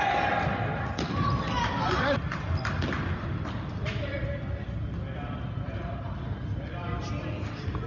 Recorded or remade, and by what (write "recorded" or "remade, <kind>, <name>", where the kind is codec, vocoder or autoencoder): recorded